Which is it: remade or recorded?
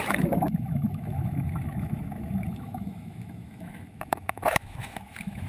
remade